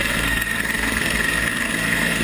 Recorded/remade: remade